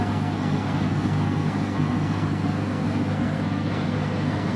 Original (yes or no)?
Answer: no